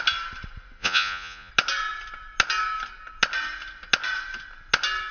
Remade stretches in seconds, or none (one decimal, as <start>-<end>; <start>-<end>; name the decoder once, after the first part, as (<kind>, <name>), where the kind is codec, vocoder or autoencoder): 0.8-1.5 (vocoder, Vocos)